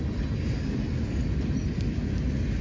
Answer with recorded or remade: recorded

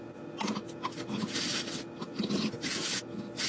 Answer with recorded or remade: recorded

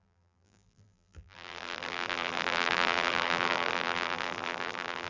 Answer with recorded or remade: remade